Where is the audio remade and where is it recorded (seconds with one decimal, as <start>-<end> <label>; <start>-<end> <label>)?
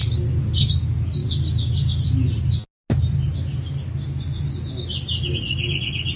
0.0-6.2 recorded